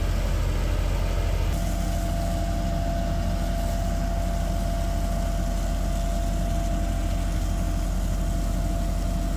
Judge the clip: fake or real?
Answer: real